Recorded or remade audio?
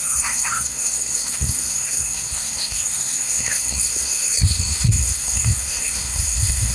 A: remade